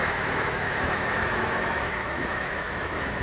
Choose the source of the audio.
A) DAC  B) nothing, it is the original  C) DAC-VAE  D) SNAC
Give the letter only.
C